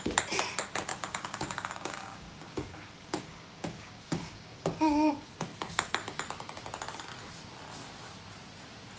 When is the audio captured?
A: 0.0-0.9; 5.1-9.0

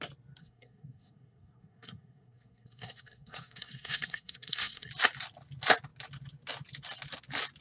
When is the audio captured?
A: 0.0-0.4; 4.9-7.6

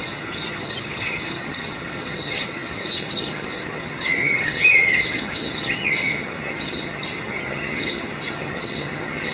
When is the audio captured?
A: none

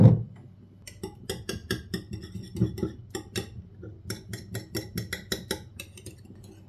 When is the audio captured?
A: 0.0-1.6; 3.1-6.7

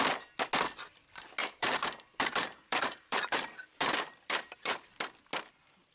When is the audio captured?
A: 0.0-1.4; 4.9-5.9